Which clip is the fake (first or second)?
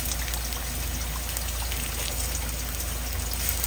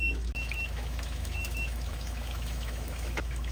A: second